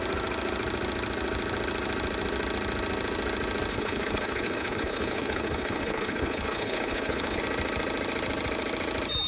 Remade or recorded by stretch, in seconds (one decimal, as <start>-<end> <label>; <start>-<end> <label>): 0.0-3.7 recorded; 3.7-7.4 remade; 7.4-9.3 recorded